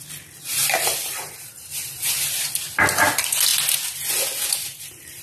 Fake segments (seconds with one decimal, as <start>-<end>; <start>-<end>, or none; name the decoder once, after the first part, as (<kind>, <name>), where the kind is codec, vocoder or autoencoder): 0.6-1.9 (vocoder, BigVGAN v2)

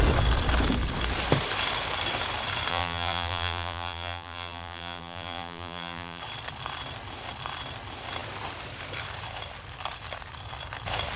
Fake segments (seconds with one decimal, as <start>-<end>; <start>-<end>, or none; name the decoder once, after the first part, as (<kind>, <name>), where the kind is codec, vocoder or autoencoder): 2.7-6.2 (vocoder, BigVGAN v2)

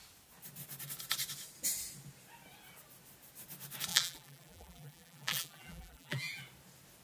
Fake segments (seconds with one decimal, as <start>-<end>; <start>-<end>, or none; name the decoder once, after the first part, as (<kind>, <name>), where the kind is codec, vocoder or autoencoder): 3.9-6.4 (vocoder, BigVGAN v2)

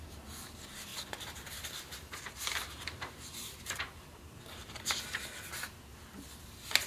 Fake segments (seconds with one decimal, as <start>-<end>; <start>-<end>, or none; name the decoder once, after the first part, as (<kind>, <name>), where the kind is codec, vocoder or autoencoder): 0.9-5.0 (vocoder, BigVGAN v2)

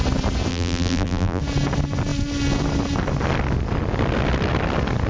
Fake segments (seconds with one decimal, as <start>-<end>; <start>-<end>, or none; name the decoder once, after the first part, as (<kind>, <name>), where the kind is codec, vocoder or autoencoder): 0.5-1.4 (vocoder, BigVGAN v2)

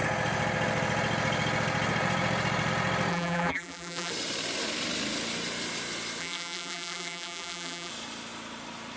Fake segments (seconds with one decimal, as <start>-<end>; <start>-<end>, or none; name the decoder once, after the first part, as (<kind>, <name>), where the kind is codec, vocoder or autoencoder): 3.1-4.1 (vocoder, BigVGAN v2); 6.2-7.9

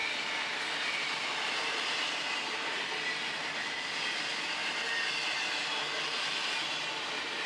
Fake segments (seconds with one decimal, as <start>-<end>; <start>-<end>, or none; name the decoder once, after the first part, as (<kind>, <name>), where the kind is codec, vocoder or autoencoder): 0.0-2.2 (vocoder, BigVGAN v2); 3.8-4.6; 7.0-7.5